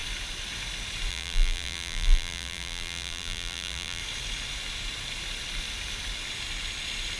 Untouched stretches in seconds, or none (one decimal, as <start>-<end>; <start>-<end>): 0.0-1.1; 4.0-7.2